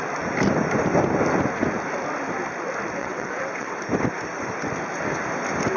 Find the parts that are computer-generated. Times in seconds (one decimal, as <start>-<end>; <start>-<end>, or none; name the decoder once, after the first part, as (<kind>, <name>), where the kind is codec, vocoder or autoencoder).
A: 3.0-3.8 (vocoder, WaveNeXt)